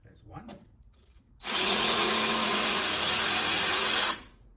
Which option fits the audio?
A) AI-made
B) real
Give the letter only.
A